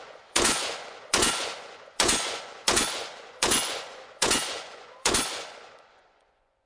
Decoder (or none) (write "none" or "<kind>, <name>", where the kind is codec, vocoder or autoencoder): vocoder, Vocos